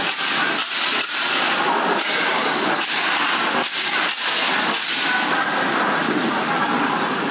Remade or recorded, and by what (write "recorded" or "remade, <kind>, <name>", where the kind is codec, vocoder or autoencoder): recorded